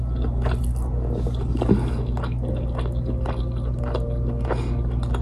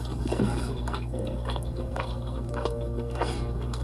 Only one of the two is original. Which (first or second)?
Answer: first